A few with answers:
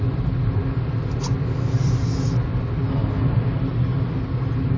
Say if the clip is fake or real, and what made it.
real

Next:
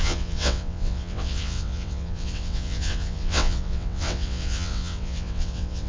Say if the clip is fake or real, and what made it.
fake, vocoder, WaveNeXt